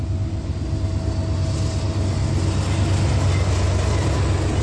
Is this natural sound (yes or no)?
yes